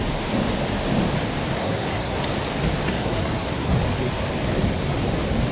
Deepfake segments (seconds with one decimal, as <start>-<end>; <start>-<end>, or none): 1.6-2.2; 2.9-3.7